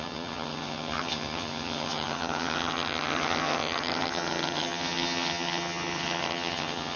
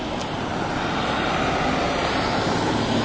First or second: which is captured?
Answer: second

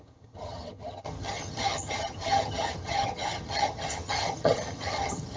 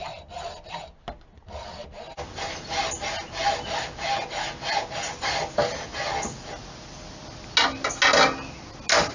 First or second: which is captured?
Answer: second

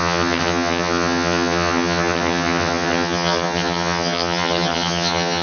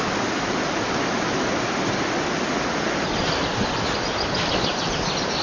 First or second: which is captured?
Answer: second